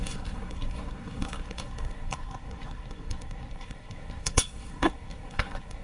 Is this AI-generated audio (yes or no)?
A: yes